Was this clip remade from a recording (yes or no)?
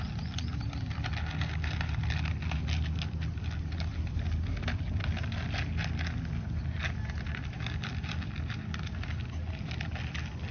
no